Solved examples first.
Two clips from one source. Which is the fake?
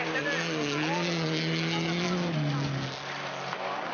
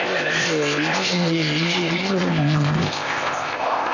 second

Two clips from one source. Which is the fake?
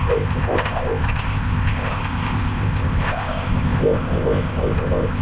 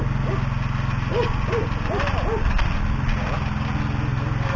first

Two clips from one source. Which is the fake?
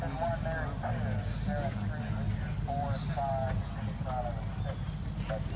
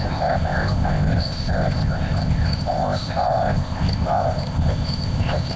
second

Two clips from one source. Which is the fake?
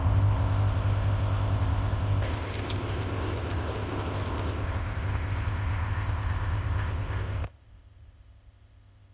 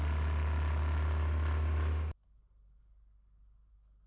first